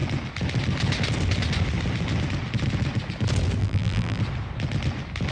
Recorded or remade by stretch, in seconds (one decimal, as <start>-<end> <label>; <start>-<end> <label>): 0.0-3.6 recorded; 3.6-4.2 remade; 4.2-5.3 recorded